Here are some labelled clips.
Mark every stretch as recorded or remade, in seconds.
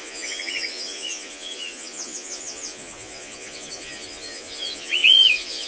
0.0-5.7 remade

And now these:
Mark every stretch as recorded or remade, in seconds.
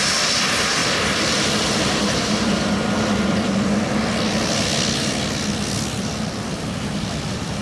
0.0-4.7 remade; 4.7-6.0 recorded; 6.0-7.6 remade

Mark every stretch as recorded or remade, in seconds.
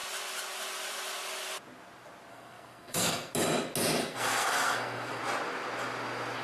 0.0-2.3 recorded; 2.3-3.3 remade; 3.3-4.0 recorded; 4.0-5.2 remade; 5.2-6.4 recorded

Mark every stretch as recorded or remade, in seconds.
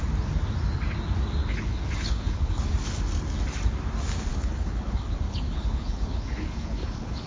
0.0-1.4 recorded; 1.4-2.7 remade; 2.7-4.3 recorded; 4.3-7.3 remade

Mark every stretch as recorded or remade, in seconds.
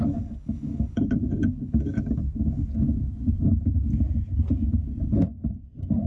0.0-2.2 remade; 2.2-6.1 recorded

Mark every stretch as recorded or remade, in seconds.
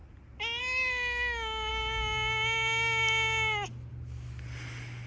0.0-5.1 recorded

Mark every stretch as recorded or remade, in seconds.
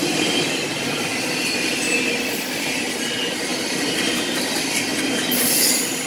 0.0-1.1 remade; 1.1-2.3 recorded; 2.3-4.9 remade; 4.9-6.1 recorded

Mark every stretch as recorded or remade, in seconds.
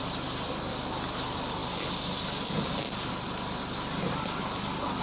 0.0-5.0 recorded